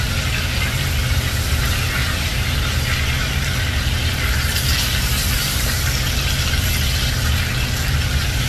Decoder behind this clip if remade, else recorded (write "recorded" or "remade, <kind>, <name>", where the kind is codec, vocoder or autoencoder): recorded